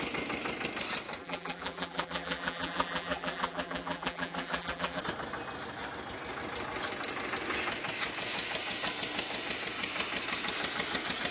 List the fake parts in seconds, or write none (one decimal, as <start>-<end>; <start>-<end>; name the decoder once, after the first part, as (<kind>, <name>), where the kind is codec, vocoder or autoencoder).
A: 1.2-5.0 (vocoder, BigVGAN v2)